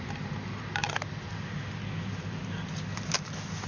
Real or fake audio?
real